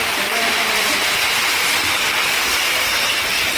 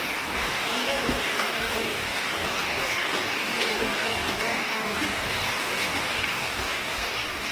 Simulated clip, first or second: second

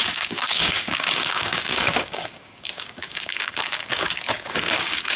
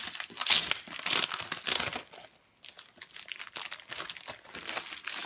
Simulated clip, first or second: first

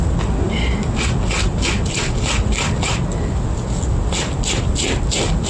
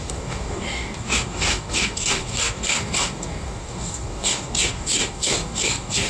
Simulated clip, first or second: second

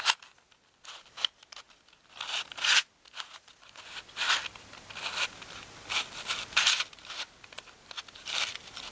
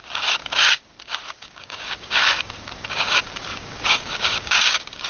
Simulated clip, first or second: second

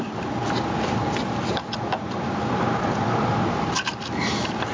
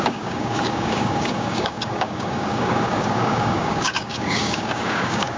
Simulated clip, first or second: second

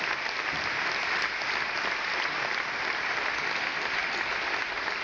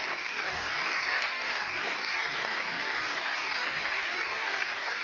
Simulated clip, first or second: second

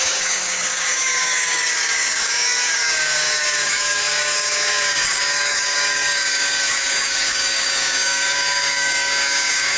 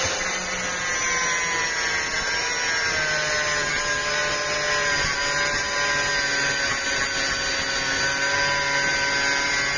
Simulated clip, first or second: first